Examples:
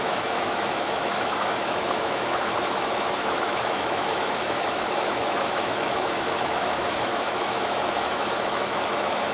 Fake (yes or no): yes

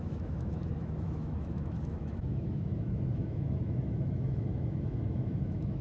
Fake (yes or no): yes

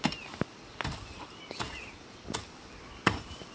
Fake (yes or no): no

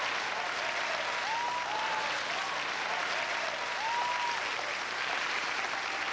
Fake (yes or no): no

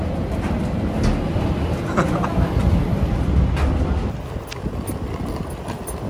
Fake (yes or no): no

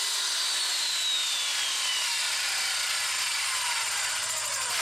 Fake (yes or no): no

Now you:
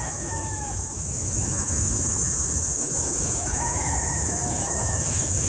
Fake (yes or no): yes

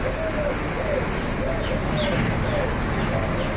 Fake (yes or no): no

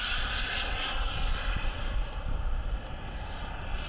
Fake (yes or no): no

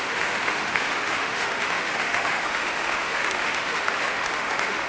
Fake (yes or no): yes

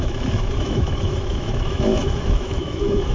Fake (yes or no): yes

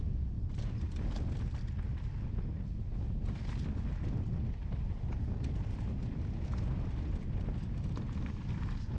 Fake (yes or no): no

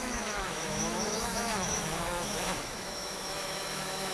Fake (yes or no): yes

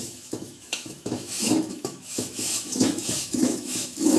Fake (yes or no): yes